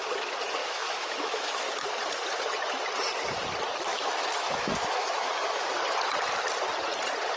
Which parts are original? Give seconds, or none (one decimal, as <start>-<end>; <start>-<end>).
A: 0.0-0.6; 1.6-3.9; 5.8-7.4